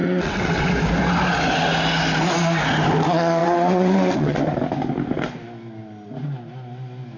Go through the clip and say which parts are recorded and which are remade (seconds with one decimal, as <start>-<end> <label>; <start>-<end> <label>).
0.0-0.7 remade; 0.7-3.4 recorded; 3.4-4.4 remade; 4.4-7.2 recorded